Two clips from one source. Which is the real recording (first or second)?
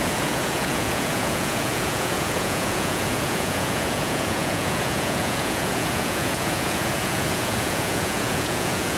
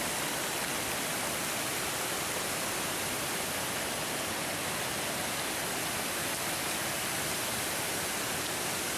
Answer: second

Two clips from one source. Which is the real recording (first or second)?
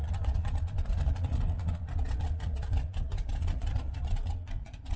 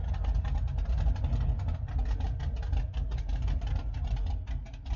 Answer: second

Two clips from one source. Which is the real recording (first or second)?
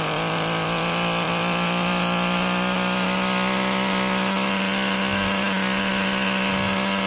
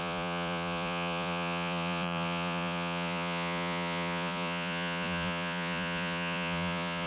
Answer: first